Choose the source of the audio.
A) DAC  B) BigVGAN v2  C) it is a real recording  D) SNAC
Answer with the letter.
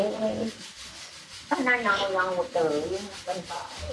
C